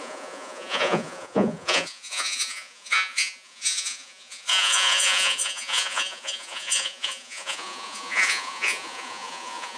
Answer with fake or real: fake